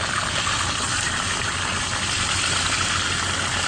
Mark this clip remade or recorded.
recorded